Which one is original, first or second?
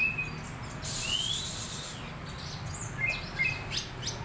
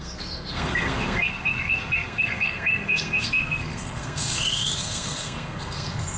first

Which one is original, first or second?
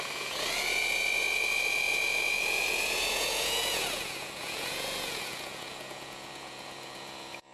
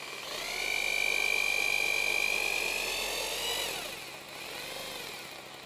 second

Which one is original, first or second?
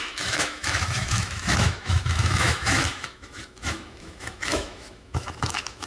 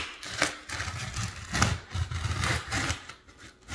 second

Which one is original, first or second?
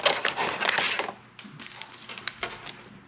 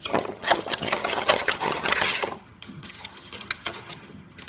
first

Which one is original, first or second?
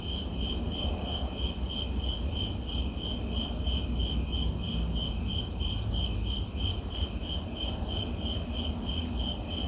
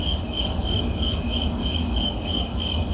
first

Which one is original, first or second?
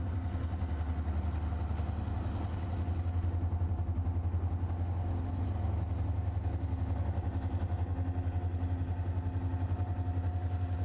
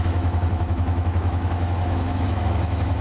first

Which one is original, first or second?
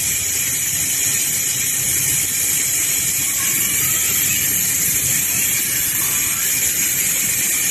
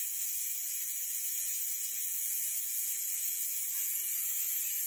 first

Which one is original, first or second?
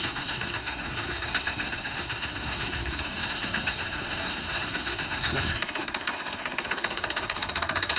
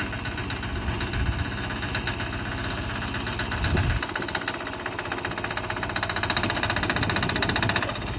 second